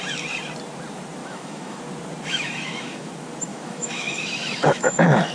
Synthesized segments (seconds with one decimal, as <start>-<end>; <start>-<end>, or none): 1.2-1.8; 2.3-3.1; 3.5-5.3

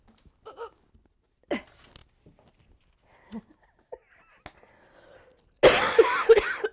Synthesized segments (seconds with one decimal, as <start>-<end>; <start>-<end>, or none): none

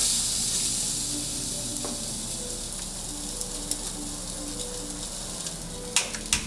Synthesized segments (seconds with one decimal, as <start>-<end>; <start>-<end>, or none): none

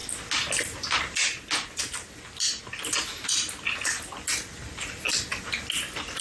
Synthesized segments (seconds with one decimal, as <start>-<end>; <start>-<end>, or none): none

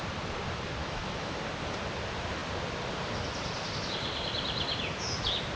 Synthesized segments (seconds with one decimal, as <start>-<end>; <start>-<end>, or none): 0.8-1.4

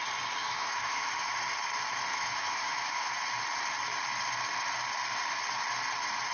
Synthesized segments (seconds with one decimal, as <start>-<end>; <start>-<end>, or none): 0.4-1.3; 2.1-3.1

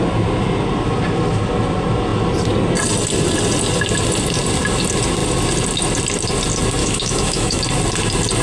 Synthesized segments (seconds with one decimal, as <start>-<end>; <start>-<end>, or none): 6.8-7.6

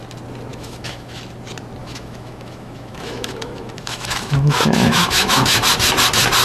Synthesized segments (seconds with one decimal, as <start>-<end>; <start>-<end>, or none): 0.5-1.2; 1.8-5.6